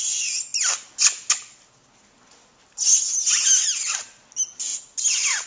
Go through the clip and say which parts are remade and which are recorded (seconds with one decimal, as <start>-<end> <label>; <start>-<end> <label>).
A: 0.0-5.5 recorded